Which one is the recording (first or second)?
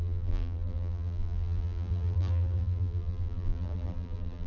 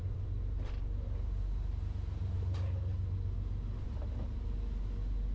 second